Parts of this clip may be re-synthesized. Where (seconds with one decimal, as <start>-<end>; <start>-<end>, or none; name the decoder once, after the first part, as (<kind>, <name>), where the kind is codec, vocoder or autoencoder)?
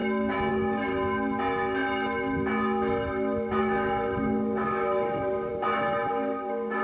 0.5-0.9 (codec, DAC); 3.6-5.5; 6.1-6.8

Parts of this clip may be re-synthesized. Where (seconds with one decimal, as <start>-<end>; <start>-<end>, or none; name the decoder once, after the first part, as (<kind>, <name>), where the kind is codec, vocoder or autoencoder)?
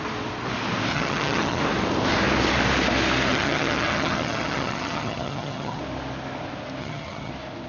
0.9-1.6 (vocoder, HiFi-GAN); 3.3-5.8; 6.8-7.3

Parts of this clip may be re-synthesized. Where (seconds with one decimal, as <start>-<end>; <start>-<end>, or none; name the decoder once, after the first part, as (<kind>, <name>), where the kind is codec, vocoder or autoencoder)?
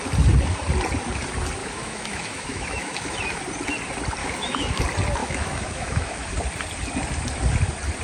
1.6-3.4 (autoencoder, DAC-VAE); 4.2-4.8; 5.2-6.3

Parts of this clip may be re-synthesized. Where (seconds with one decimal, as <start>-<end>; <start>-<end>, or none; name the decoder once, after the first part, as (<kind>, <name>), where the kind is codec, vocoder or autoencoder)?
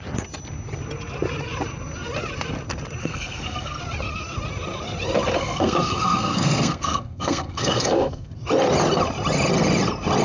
3.0-3.8 (codec, SNAC); 5.4-8.3